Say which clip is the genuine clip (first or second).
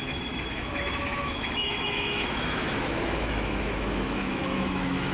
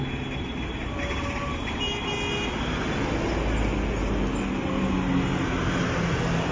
second